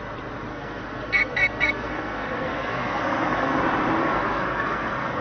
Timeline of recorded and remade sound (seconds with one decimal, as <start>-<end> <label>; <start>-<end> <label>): 0.0-0.5 recorded; 0.5-3.6 remade; 3.6-4.0 recorded; 4.0-5.2 remade